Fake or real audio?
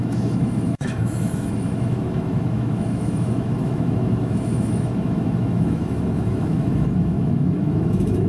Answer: fake